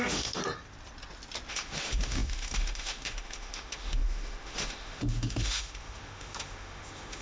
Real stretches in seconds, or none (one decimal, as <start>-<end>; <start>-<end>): 0.4-1.5